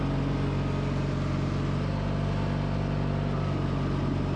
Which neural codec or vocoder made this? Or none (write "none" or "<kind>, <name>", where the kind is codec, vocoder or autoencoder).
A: none